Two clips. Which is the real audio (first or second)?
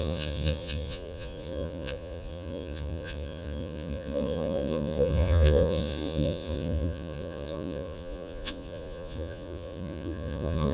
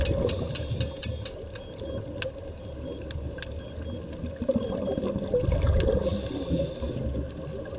second